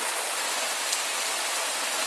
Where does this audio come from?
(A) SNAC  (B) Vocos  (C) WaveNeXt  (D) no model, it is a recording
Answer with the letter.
D